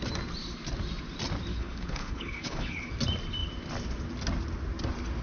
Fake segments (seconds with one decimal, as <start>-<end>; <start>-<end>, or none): 1.5-2.9